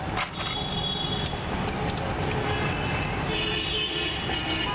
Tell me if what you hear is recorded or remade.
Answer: recorded